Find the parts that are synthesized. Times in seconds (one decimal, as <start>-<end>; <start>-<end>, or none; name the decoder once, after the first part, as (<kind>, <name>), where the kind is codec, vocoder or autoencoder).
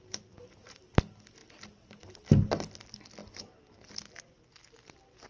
none